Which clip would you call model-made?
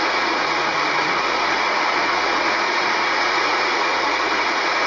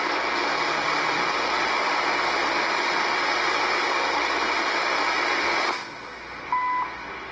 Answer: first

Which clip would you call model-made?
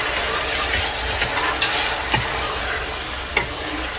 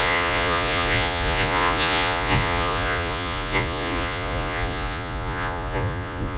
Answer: second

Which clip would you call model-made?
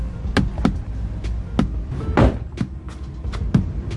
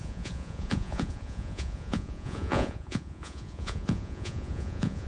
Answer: second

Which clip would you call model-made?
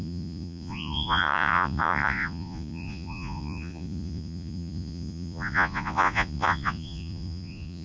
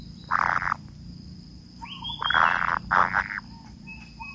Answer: first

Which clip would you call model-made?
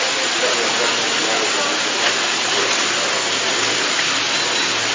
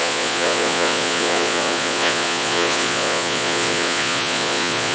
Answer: second